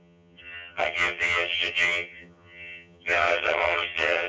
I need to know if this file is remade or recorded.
remade